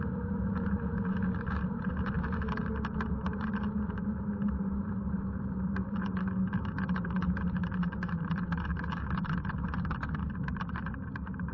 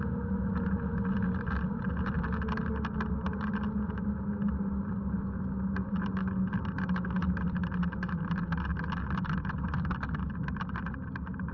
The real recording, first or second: second